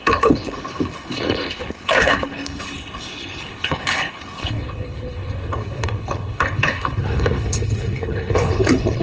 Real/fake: fake